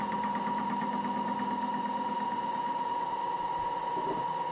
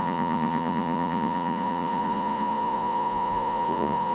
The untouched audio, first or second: first